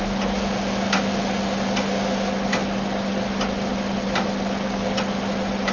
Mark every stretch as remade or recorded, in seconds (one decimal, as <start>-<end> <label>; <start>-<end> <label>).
0.0-5.7 recorded